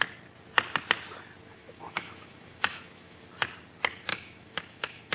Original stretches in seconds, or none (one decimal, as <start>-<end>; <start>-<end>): 0.0-1.5; 3.2-4.1